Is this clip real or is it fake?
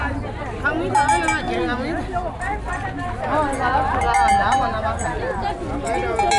real